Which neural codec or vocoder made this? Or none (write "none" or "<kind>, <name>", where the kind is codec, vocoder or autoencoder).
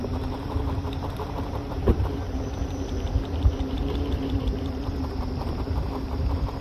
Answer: vocoder, BigVGAN v2